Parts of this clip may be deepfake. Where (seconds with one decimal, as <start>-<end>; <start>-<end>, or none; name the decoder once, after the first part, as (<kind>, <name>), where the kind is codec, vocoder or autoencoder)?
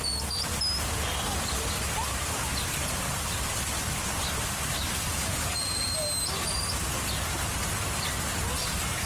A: 5.1-5.9 (vocoder, Vocos)